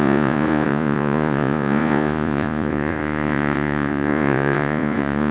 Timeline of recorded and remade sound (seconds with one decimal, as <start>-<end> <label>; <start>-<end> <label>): 0.0-5.3 remade